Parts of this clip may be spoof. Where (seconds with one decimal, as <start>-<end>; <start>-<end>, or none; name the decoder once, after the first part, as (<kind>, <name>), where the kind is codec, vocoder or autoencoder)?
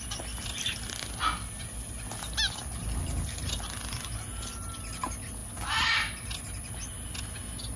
none